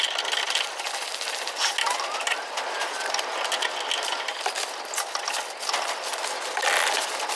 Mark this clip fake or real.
real